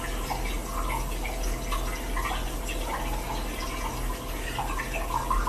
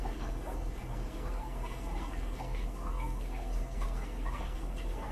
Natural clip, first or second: first